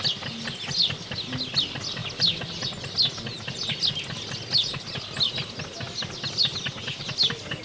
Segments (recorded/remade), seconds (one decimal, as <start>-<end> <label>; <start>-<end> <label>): 0.0-7.6 recorded